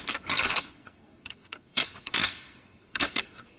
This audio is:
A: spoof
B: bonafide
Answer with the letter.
A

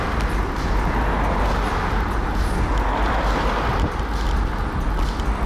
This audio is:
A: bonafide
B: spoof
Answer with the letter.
A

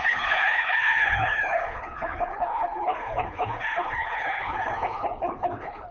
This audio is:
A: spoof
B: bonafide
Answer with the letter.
A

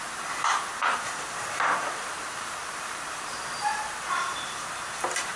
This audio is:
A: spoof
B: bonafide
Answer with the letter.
A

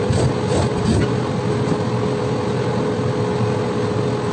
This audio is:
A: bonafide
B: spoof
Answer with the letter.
A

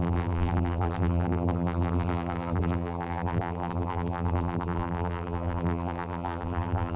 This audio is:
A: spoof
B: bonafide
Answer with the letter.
A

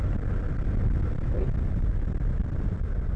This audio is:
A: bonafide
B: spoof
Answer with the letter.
A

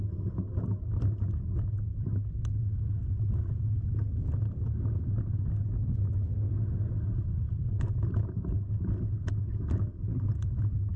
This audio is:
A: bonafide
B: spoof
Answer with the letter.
A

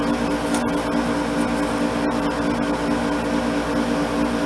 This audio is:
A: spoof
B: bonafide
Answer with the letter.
B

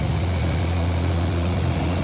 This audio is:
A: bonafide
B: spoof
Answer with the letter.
B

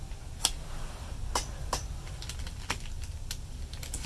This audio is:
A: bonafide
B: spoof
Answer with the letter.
A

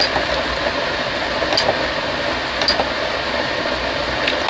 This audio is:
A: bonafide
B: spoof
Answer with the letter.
A